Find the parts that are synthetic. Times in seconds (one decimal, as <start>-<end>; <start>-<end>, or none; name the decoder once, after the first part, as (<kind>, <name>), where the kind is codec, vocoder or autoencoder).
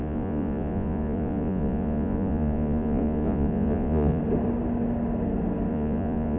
0.0-4.2 (vocoder, Vocos); 5.7-6.4